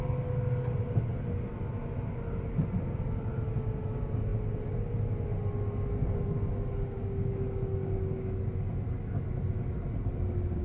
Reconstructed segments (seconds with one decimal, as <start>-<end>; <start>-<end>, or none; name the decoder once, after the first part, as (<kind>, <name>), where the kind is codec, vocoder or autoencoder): 6.0-8.4 (codec, DAC)